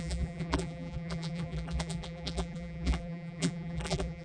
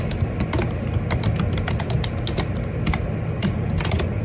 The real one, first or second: second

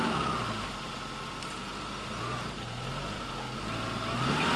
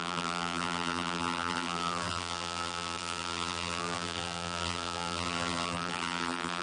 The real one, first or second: first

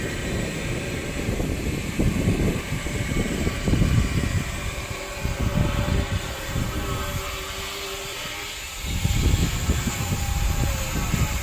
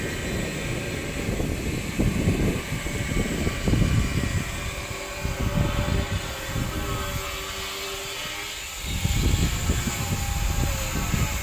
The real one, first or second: second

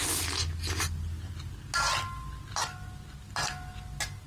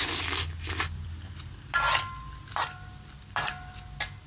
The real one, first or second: first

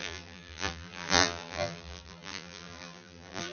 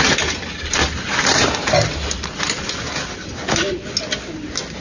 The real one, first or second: second